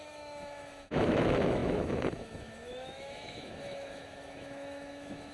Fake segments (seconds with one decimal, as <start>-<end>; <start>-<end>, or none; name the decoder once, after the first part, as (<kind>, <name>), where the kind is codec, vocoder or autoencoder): 0.0-5.3 (autoencoder, DAC-VAE)